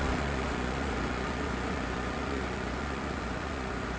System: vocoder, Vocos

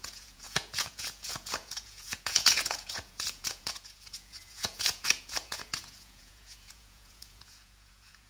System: vocoder, Vocos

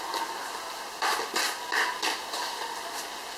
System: none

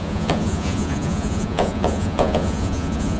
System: vocoder, Vocos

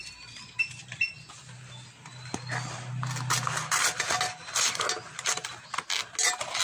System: none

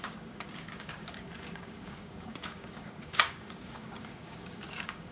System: codec, DAC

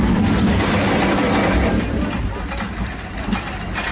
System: none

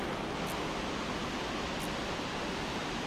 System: none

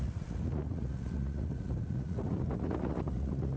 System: vocoder, Vocos